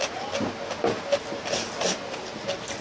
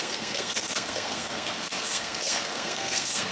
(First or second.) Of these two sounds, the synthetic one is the second